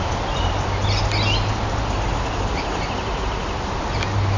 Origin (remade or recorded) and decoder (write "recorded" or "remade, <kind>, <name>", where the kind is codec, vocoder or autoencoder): recorded